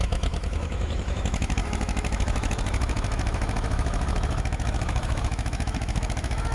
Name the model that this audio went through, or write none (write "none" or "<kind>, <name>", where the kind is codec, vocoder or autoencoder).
autoencoder, DAC-VAE